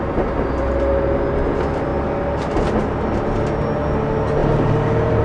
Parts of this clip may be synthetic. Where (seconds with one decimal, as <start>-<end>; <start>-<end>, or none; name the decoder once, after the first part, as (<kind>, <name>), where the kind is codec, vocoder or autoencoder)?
4.4-5.2 (vocoder, BigVGAN v2)